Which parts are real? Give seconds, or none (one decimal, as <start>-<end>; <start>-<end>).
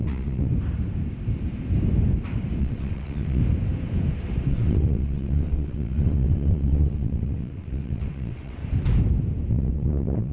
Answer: 0.5-2.6; 3.4-4.5; 8.6-9.5